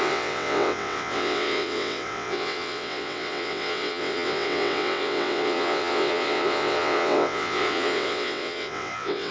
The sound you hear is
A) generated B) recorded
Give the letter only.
A